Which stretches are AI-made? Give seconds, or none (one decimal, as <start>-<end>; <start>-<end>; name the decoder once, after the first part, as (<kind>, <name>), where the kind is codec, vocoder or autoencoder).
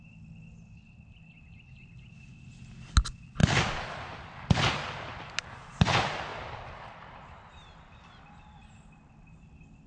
none